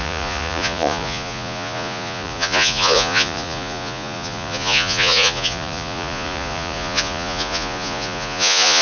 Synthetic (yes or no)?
yes